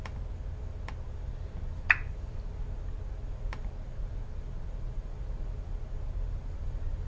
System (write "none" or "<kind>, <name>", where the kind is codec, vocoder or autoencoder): none